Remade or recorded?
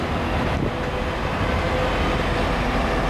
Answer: recorded